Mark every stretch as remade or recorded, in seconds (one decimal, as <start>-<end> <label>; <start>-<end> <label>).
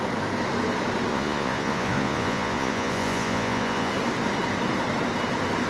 0.0-1.1 recorded; 1.1-3.9 remade; 3.9-5.7 recorded